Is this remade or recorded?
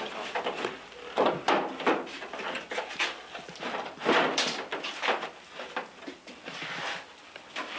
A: remade